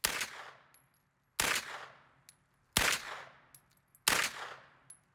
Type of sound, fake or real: real